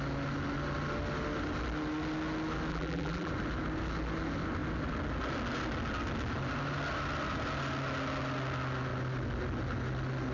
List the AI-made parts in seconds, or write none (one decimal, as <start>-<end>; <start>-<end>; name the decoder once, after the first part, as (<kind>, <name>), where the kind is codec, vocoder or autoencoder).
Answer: 2.7-3.3 (vocoder, BigVGAN v2)